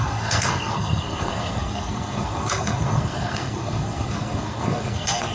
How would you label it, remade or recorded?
remade